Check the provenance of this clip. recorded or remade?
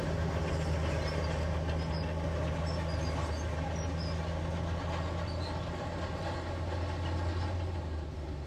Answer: recorded